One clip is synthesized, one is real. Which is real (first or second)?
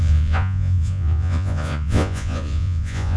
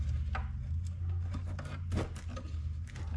second